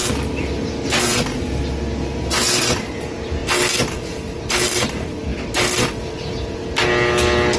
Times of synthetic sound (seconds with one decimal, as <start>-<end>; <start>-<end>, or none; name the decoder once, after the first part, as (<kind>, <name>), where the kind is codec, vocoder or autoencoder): none